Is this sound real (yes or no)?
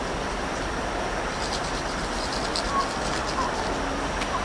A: yes